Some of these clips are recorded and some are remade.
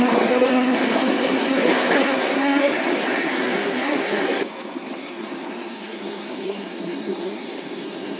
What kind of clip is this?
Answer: remade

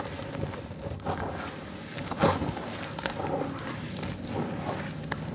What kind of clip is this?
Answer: recorded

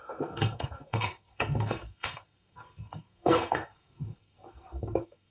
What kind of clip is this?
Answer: remade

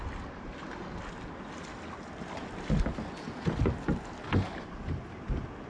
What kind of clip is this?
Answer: recorded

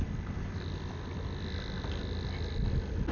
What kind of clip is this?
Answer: recorded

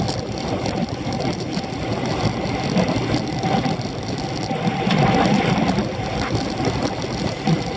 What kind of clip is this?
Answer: recorded